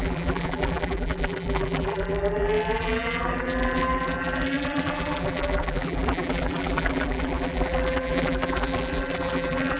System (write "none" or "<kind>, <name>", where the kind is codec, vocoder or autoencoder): vocoder, BigVGAN v2